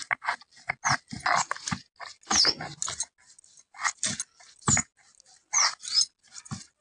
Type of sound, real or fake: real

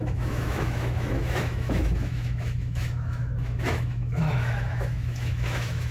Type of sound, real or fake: fake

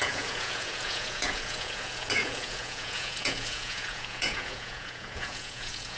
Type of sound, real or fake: fake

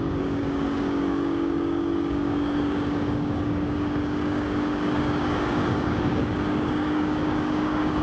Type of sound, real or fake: fake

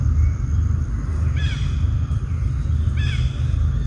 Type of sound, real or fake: real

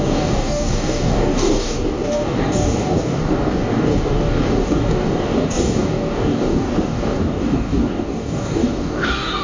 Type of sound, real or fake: fake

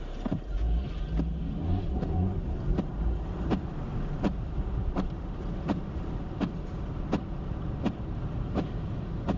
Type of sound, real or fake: real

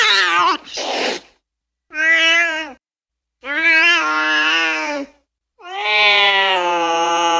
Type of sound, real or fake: fake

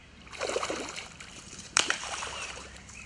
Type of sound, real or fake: fake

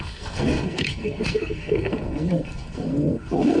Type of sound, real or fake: fake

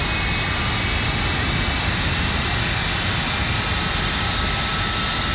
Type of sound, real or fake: real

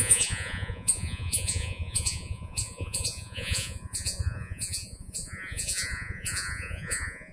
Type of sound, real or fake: fake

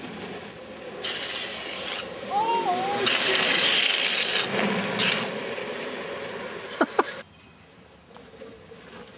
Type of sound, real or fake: real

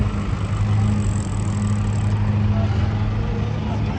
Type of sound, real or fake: real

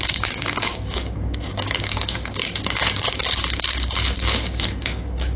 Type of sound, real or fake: fake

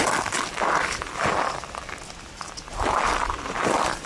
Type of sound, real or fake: fake